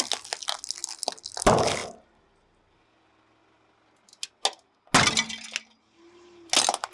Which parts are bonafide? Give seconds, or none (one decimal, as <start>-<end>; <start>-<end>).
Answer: 0.0-6.9

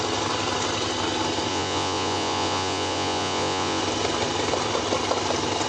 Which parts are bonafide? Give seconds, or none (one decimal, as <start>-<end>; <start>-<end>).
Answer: 0.0-1.5; 3.8-5.7

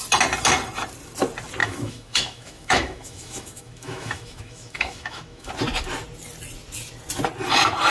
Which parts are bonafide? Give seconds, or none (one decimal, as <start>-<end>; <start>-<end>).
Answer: 0.0-1.6; 5.5-7.9

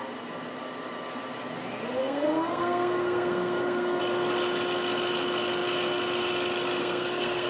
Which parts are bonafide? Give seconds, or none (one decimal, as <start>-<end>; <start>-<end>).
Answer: 0.0-2.0; 4.0-6.8

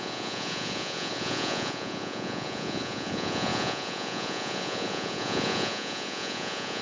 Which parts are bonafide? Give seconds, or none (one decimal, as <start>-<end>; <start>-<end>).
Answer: none

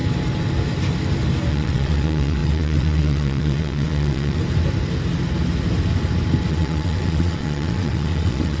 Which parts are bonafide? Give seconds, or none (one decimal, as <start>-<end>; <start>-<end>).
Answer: 0.0-1.5; 4.4-6.5